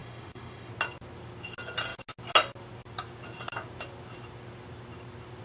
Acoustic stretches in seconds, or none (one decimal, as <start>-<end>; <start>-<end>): 0.7-5.4